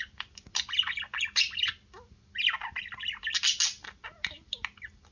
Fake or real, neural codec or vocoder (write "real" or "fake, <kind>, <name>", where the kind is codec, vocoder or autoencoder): real